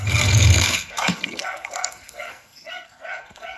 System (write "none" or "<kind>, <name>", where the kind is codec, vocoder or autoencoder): codec, SNAC